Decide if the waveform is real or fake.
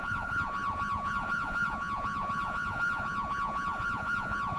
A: fake